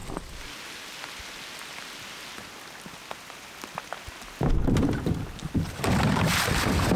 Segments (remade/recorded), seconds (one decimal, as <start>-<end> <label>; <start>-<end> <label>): 0.0-7.0 recorded